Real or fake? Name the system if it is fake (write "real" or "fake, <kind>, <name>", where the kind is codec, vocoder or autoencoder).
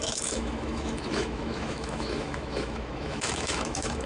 fake, autoencoder, DAC-VAE